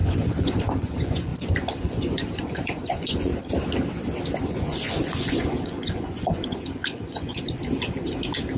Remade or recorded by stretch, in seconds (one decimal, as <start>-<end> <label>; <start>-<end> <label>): 0.0-1.3 remade; 1.3-1.8 recorded; 1.8-3.3 remade; 3.3-4.5 recorded; 4.5-7.3 remade; 7.3-8.6 recorded